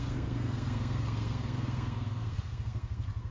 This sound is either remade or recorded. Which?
remade